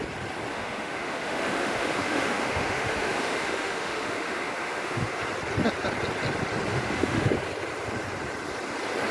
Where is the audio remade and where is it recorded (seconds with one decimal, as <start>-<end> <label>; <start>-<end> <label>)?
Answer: 0.0-0.5 recorded; 0.5-5.2 remade; 5.2-6.7 recorded; 6.7-7.3 remade; 7.3-9.1 recorded